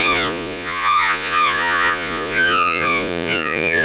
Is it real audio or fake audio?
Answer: fake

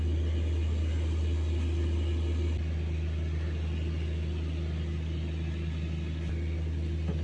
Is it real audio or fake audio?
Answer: real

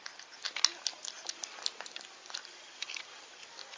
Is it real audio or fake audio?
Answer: real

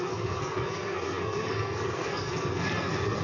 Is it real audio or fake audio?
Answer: fake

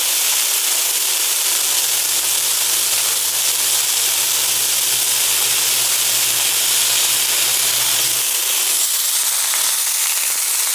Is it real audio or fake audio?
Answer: real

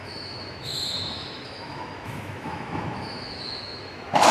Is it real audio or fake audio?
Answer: fake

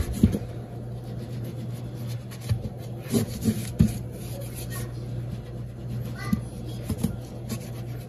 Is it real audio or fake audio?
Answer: real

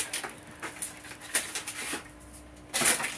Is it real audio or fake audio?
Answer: real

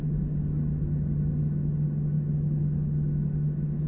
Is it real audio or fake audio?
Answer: real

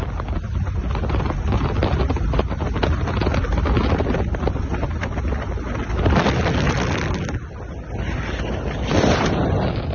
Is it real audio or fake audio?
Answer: real